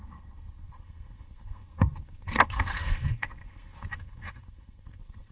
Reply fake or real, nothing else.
fake